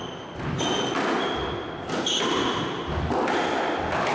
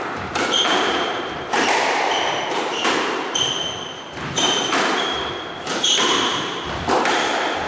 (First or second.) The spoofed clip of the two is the second